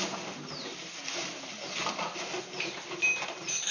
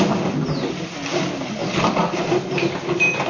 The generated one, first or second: first